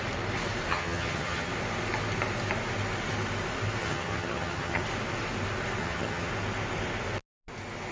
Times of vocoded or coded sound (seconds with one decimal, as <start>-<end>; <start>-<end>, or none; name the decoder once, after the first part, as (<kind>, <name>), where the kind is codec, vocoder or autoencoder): 0.7-1.5 (vocoder, HiFi-GAN); 3.8-4.8; 5.8-6.3